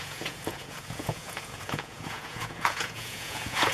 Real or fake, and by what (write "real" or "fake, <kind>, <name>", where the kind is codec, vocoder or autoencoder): fake, vocoder, Vocos